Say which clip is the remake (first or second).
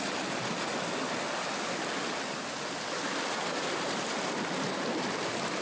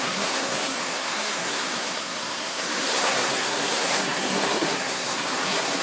second